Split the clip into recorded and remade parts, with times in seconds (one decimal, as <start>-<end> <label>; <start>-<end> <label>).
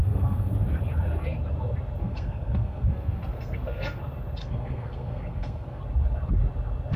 0.0-0.5 remade; 0.5-2.0 recorded; 2.0-4.0 remade; 4.0-4.4 recorded; 4.4-5.8 remade; 5.8-7.0 recorded